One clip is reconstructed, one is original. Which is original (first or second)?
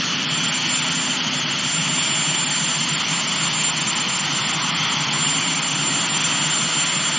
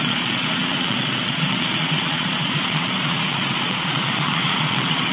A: first